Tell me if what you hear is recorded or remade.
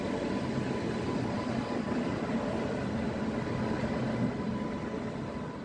recorded